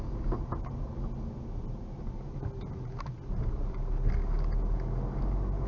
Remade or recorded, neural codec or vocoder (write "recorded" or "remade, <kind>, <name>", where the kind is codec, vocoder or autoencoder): recorded